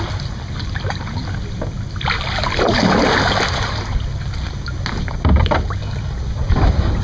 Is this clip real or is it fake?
real